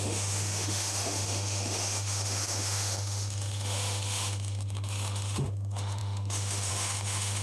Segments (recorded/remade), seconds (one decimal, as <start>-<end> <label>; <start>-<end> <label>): 0.0-7.4 remade